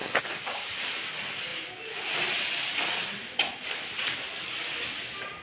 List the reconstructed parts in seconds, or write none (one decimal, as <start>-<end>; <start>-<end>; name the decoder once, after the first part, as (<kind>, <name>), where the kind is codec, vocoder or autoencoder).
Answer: 0.0-0.8 (codec, DAC)